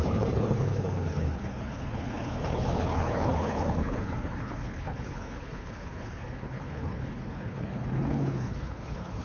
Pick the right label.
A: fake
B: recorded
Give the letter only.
A